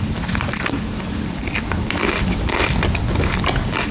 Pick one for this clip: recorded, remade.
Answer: remade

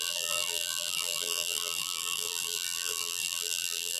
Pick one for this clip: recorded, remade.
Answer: remade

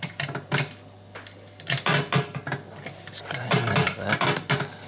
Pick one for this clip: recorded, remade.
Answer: recorded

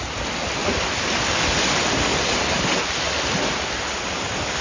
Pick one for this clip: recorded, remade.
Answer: recorded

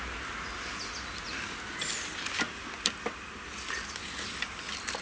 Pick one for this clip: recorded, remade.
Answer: recorded